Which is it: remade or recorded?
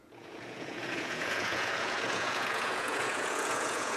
remade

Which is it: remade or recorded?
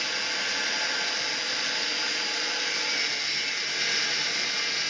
recorded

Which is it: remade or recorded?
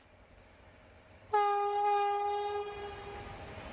recorded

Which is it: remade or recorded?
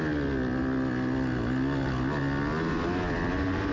recorded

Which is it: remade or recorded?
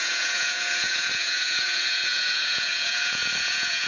remade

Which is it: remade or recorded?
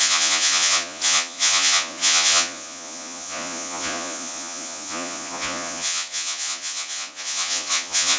remade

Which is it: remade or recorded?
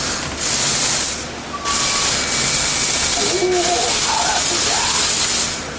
recorded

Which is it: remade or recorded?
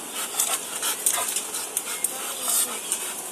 recorded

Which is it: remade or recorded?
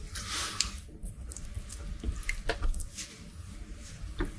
recorded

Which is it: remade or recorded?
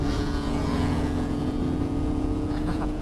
remade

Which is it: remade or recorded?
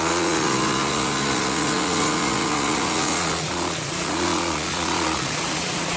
remade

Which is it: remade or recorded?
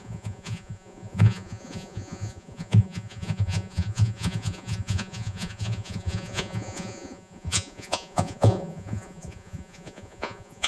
remade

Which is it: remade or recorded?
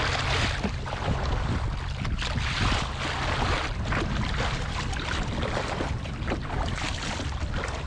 recorded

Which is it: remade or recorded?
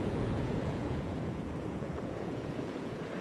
remade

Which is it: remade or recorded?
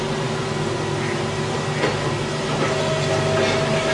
recorded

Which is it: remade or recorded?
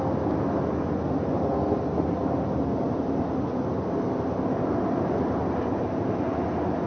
recorded